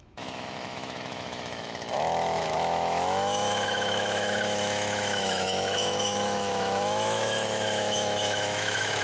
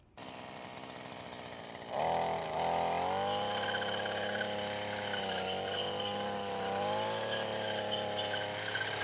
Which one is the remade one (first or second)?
first